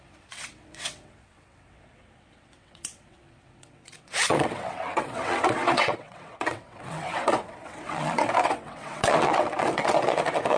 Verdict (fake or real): fake